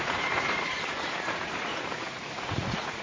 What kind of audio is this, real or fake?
fake